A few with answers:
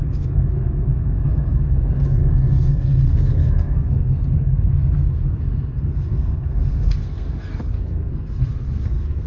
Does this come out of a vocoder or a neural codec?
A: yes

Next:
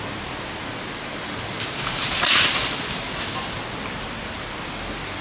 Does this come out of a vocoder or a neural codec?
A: no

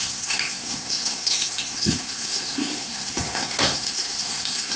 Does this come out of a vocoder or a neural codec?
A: yes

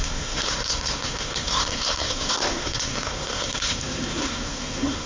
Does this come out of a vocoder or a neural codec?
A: yes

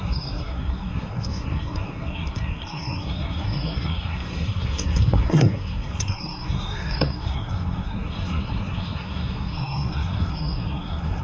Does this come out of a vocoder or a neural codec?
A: yes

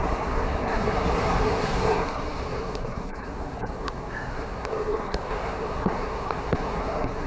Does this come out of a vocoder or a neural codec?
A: yes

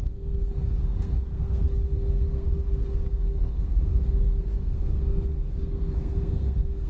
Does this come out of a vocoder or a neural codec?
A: yes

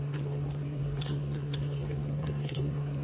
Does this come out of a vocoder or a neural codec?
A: yes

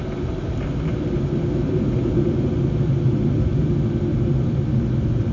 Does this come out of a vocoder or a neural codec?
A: no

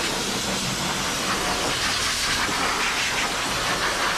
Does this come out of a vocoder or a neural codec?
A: no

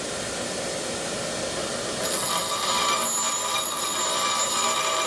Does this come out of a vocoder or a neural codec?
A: no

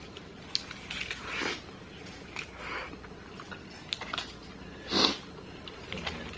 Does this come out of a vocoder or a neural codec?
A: no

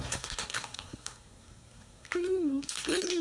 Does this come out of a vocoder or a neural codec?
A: yes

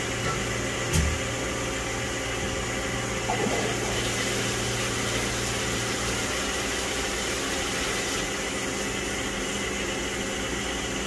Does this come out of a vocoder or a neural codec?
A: no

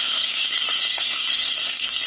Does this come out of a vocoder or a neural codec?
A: yes